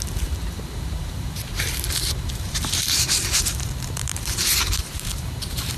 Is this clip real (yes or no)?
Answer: no